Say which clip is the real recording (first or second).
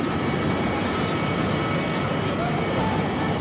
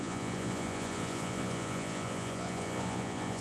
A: first